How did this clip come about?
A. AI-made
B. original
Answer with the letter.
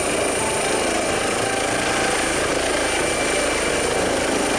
B